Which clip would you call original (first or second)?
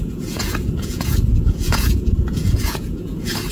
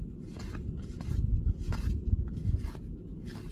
second